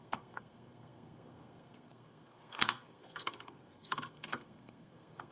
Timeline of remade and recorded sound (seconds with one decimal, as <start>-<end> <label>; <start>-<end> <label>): 0.0-5.3 remade